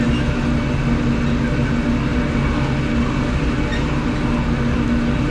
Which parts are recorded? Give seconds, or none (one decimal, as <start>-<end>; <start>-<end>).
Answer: 0.0-5.3